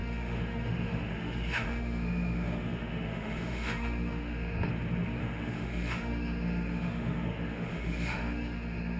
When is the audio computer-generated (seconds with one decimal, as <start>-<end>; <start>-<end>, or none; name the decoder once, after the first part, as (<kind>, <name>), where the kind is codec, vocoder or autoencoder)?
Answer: 0.0-4.7 (autoencoder, DAC-VAE); 5.2-9.0